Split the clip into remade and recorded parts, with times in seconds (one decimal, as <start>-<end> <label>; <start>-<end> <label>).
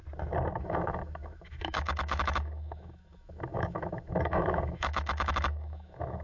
0.0-0.6 recorded; 0.6-6.2 remade